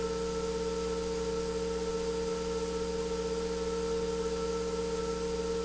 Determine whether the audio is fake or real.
real